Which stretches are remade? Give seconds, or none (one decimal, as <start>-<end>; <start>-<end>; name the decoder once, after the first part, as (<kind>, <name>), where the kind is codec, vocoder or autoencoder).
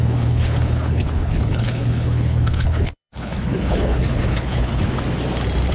0.0-4.8 (codec, HILCodec)